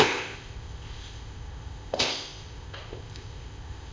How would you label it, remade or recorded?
remade